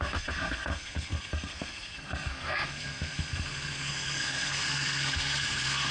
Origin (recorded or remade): remade